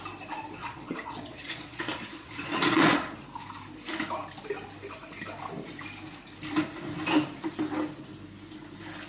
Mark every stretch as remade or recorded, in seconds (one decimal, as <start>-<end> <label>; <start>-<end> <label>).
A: 0.0-0.6 recorded; 0.6-3.2 remade; 3.2-9.1 recorded